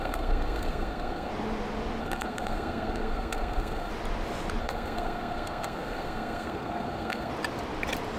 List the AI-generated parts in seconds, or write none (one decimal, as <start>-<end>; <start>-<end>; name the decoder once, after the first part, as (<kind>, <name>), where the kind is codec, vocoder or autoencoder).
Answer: 0.0-1.3 (codec, SNAC); 2.0-3.9; 4.6-7.3